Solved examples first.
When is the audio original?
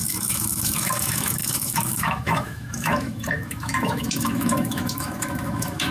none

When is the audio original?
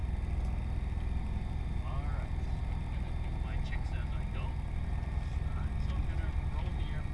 0.0-7.1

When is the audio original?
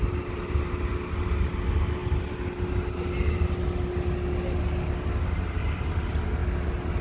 0.0-7.0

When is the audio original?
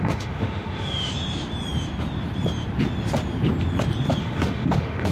1.1-4.2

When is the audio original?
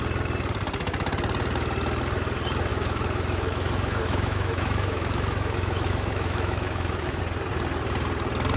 0.0-2.7; 7.2-8.6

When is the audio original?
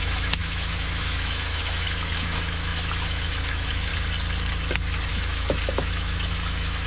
3.9-5.1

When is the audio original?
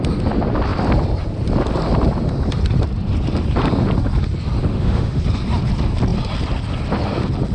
0.0-4.7; 5.2-7.5